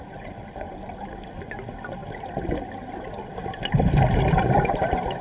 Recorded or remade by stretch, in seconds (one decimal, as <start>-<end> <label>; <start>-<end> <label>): 0.0-5.2 recorded